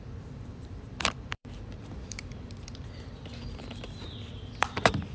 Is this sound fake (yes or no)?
yes